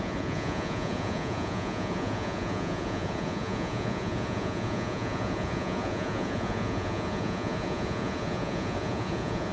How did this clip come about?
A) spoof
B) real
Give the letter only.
A